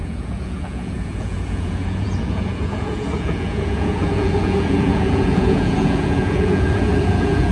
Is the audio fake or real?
fake